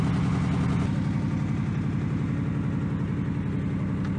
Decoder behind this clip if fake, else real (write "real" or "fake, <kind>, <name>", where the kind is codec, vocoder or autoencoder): real